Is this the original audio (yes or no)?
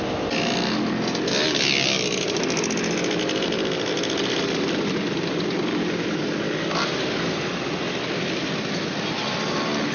yes